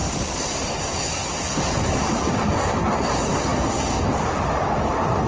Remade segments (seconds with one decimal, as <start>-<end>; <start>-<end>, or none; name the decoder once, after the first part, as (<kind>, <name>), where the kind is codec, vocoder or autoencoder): none